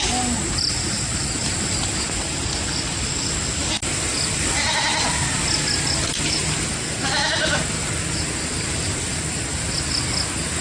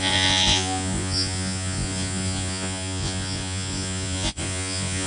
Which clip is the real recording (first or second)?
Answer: first